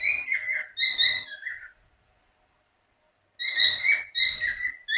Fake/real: real